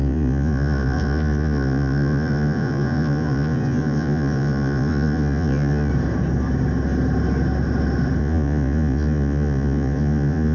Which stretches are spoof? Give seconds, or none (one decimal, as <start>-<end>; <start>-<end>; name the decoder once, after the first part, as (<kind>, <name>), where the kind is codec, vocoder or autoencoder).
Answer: 0.0-5.9 (vocoder, Vocos); 8.2-10.5